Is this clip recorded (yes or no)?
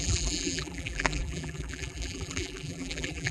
no